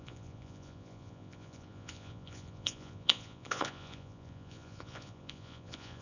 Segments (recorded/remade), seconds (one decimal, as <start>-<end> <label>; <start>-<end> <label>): 0.0-6.0 remade